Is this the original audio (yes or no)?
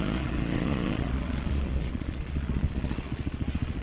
no